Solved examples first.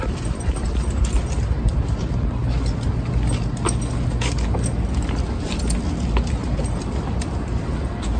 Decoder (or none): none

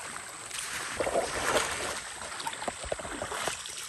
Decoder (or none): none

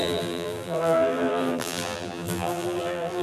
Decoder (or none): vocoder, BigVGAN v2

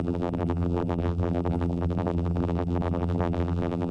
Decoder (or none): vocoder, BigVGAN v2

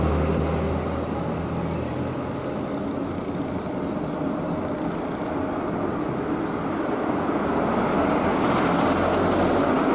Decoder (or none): none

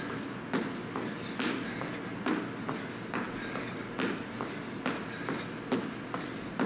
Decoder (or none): none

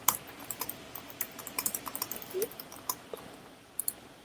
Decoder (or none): vocoder, BigVGAN v2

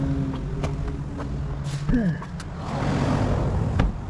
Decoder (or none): none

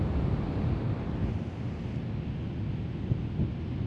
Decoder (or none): none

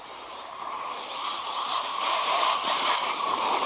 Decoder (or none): vocoder, BigVGAN v2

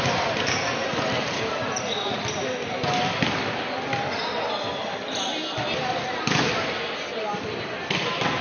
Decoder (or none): none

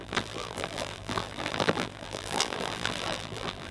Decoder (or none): vocoder, BigVGAN v2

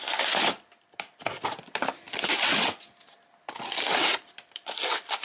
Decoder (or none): vocoder, BigVGAN v2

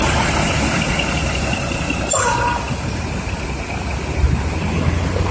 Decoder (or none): none